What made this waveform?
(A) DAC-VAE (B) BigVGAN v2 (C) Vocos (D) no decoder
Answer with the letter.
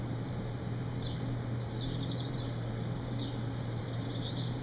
B